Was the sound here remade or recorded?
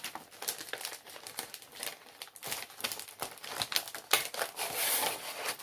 remade